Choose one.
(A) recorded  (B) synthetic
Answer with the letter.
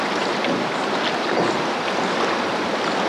A